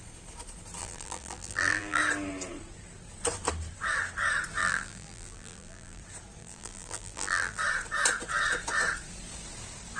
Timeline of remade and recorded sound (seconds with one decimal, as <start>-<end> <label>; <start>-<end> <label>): 0.0-0.8 recorded; 0.8-2.0 remade; 2.0-4.6 recorded; 4.6-6.0 remade; 6.0-6.4 recorded; 6.4-7.6 remade; 7.6-10.0 recorded